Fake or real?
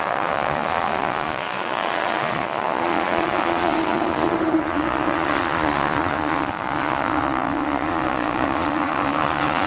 fake